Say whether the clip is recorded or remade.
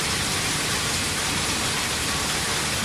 recorded